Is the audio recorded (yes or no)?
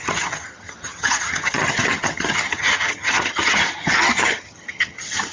no